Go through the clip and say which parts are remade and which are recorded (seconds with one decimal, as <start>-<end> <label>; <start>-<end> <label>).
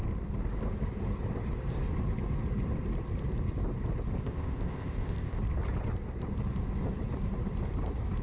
0.0-4.2 recorded; 4.2-5.4 remade; 5.4-8.2 recorded